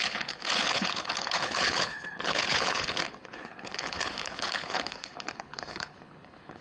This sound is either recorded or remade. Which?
remade